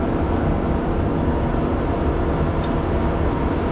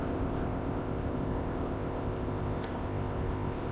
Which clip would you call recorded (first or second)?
first